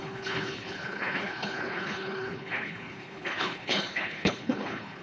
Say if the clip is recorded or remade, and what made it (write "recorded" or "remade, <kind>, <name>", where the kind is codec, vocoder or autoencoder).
remade, codec, HILCodec